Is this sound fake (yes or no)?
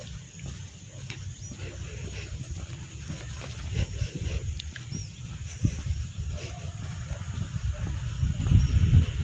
no